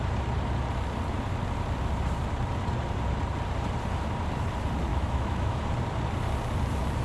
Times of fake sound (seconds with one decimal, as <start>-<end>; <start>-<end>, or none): 4.9-5.6